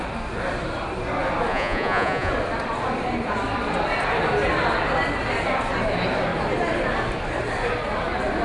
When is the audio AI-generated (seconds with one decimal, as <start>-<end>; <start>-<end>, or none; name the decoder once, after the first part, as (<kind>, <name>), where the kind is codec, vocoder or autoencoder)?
1.5-2.3 (vocoder, Vocos)